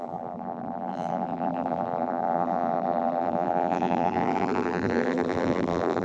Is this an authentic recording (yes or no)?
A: no